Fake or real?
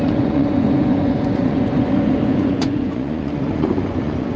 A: fake